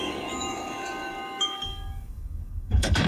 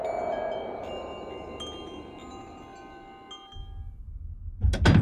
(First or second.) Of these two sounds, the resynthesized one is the first